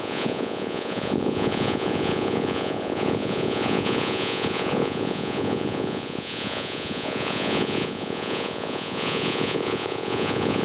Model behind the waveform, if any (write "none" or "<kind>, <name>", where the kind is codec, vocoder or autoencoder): vocoder, Vocos